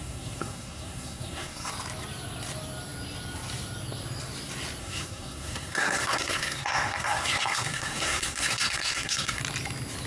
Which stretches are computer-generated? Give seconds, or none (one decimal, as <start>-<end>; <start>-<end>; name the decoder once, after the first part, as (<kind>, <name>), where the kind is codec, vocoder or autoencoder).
0.0-1.7 (codec, SNAC); 4.8-9.4